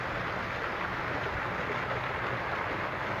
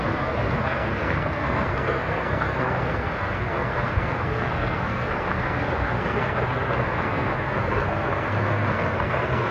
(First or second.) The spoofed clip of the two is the second